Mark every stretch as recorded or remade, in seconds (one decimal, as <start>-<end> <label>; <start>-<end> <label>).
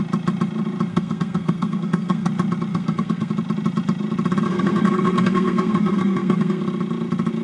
0.0-0.9 recorded; 0.9-2.3 remade; 2.3-2.7 recorded; 2.7-3.3 remade; 3.3-4.5 recorded; 4.5-6.6 remade; 6.6-7.4 recorded